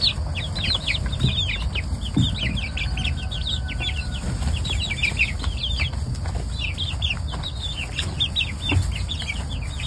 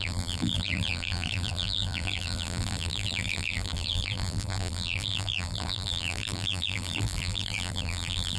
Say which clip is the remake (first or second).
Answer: second